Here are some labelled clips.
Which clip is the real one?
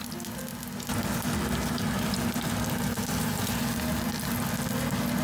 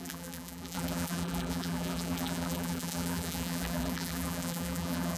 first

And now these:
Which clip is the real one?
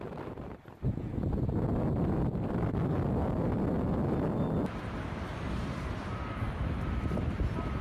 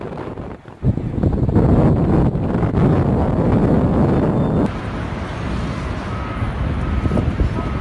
second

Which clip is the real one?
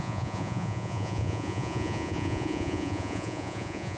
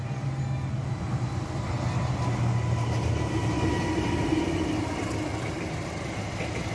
second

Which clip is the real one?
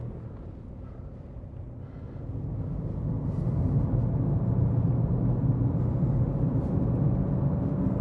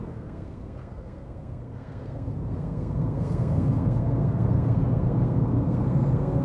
first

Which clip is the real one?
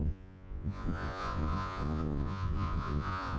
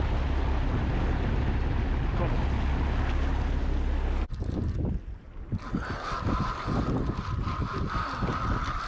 second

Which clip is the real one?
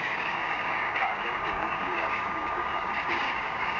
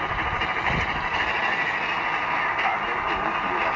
second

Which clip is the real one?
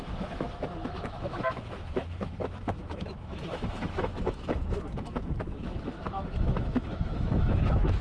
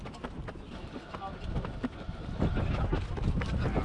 second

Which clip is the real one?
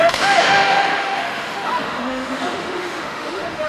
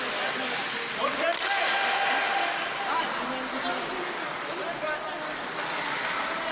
second